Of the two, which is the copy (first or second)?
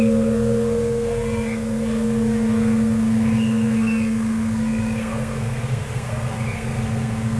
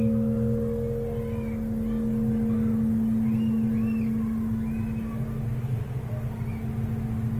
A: first